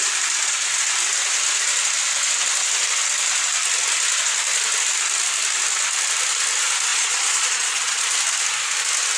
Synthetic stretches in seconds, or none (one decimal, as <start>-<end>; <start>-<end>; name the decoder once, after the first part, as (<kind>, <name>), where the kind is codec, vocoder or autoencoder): 6.9-8.0 (vocoder, Vocos)